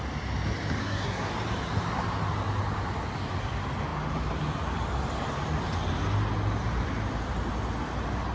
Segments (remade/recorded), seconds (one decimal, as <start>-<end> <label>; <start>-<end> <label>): 0.0-0.8 recorded; 0.8-1.3 remade; 1.3-8.3 recorded